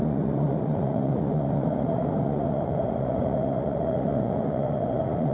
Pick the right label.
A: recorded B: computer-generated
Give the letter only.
B